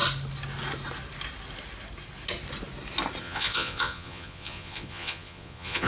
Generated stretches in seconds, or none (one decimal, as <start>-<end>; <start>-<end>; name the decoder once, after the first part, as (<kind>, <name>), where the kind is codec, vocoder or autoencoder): 3.2-5.9 (vocoder, Vocos)